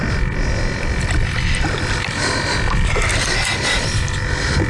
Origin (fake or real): real